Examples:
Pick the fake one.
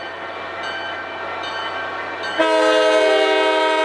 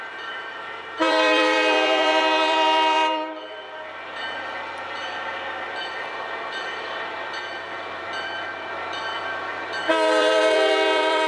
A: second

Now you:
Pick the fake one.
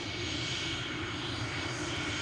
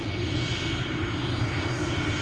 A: first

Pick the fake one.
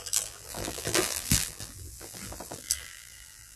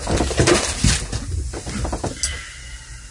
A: first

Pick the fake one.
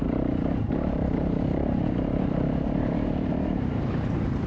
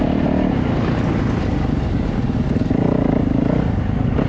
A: first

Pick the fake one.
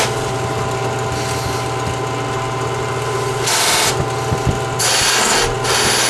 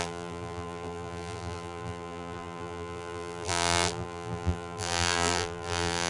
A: second